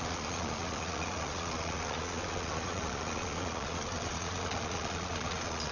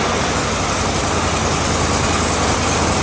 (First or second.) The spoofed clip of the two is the first